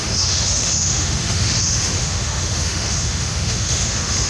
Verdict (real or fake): fake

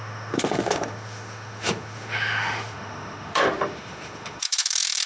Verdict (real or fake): fake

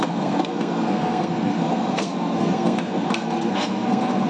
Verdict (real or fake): fake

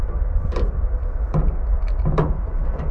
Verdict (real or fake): real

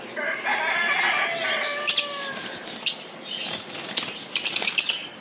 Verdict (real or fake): real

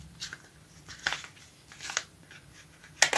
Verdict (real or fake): real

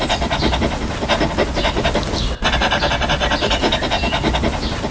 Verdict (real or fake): real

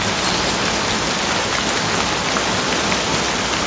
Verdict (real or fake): real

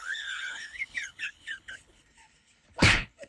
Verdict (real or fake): fake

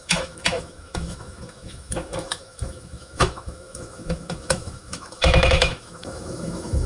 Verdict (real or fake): fake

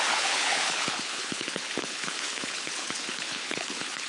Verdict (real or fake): fake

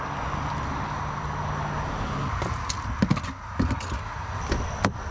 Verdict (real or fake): real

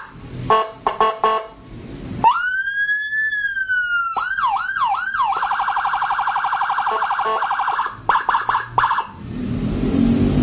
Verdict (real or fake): real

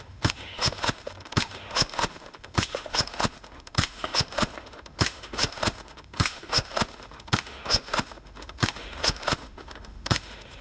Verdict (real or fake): fake